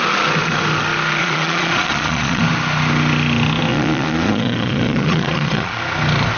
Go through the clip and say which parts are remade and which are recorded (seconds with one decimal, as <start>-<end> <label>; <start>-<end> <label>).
0.0-1.2 recorded; 1.2-2.4 remade; 2.4-3.7 recorded; 3.7-5.8 remade; 5.8-6.4 recorded